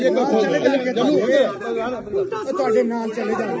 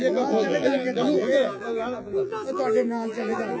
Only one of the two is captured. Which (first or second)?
first